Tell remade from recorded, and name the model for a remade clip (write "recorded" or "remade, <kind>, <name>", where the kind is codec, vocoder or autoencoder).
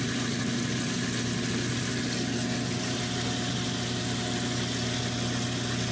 recorded